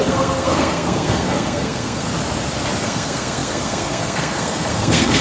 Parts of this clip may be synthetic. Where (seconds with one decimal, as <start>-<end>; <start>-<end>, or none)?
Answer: 0.0-2.1; 2.8-5.2